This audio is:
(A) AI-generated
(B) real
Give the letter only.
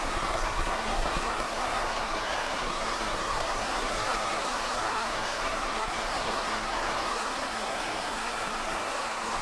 A